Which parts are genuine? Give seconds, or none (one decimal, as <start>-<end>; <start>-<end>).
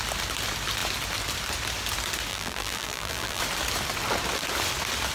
0.0-2.3; 3.4-5.1